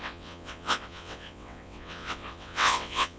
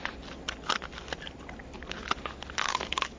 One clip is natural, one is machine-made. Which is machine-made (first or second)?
first